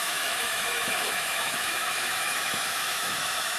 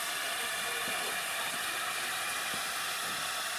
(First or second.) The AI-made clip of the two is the first